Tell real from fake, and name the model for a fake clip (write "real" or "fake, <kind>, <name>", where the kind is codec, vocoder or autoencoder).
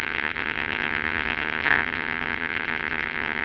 fake, vocoder, HiFi-GAN